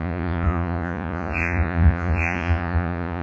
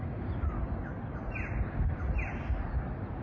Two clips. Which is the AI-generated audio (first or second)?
first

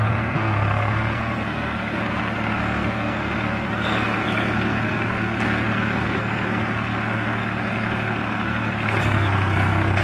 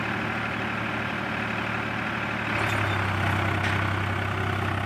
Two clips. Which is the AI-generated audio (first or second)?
first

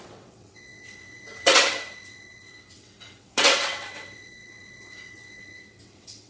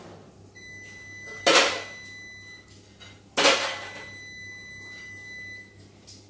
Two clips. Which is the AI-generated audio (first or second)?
first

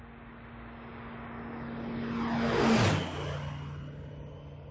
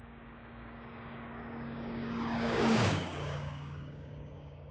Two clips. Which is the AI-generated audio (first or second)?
second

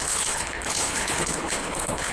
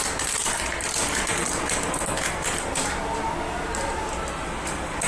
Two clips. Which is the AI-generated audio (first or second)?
first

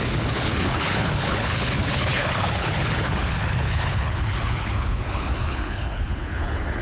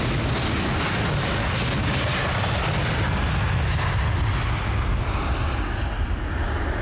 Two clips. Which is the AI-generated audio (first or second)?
first